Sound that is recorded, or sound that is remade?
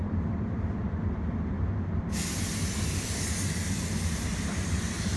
remade